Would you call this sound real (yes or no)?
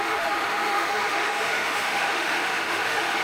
no